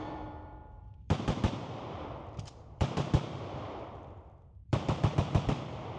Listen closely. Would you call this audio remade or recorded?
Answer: remade